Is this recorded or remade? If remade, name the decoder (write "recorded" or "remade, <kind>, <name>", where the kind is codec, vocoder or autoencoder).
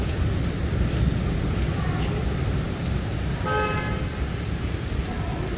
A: recorded